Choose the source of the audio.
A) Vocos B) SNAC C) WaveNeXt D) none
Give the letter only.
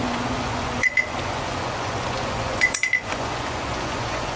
A